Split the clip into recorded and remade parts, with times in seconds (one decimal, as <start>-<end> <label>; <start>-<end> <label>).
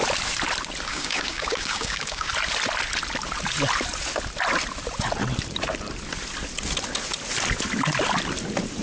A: 0.0-0.9 recorded; 0.9-2.3 remade; 2.3-8.8 recorded